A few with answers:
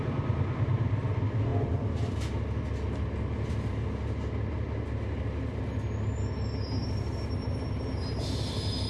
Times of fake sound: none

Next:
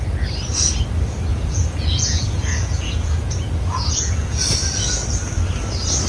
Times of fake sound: 1.3-4.4 (vocoder, Vocos)

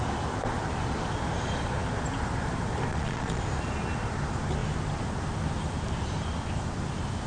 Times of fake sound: 2.9-3.4 (vocoder, Vocos)

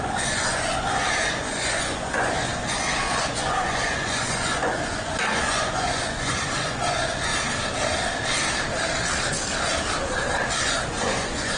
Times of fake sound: 0.0-7.3 (vocoder, Vocos); 10.6-11.6